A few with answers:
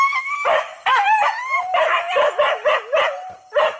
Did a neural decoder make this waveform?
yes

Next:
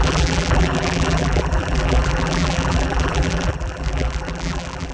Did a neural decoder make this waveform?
yes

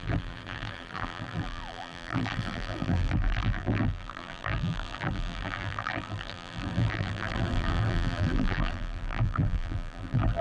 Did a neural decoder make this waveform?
yes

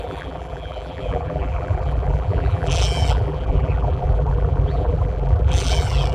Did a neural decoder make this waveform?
yes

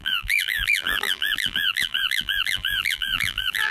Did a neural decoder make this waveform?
yes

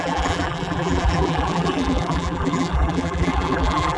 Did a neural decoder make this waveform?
yes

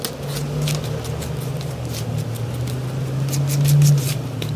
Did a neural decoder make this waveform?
no